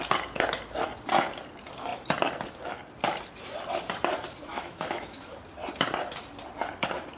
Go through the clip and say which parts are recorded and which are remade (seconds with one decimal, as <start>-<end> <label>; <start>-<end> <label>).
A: 0.0-4.5 recorded; 4.5-5.3 remade; 5.3-7.2 recorded

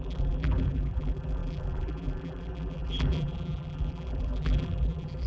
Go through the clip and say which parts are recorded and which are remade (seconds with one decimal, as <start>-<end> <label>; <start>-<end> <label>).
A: 0.0-5.3 remade

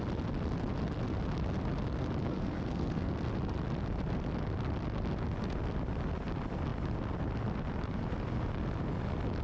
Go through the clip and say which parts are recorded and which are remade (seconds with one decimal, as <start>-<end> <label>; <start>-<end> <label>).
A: 0.0-2.2 recorded; 2.2-3.1 remade; 3.1-9.4 recorded

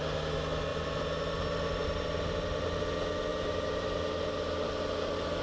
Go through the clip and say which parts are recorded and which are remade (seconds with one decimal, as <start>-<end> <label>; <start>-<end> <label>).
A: 0.0-0.7 recorded; 0.7-2.8 remade; 2.8-3.3 recorded; 3.3-4.7 remade; 4.7-5.4 recorded

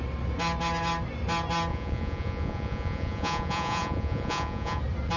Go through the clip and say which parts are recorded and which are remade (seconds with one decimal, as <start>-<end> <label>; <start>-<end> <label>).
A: 0.0-1.7 recorded; 1.7-4.8 remade; 4.8-5.2 recorded

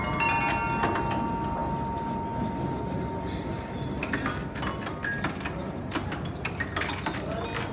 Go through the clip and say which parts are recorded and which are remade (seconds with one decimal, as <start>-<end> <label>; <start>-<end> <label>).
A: 0.0-7.7 recorded

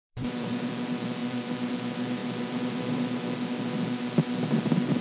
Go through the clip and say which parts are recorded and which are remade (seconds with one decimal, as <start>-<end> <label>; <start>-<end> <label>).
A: 0.0-0.7 remade; 0.7-1.2 recorded; 1.2-1.7 remade; 1.7-2.2 recorded; 2.2-2.8 remade; 2.8-5.0 recorded